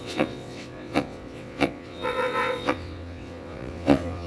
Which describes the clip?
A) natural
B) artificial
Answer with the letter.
B